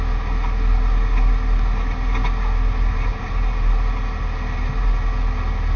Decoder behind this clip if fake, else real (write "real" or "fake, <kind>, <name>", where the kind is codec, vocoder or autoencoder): real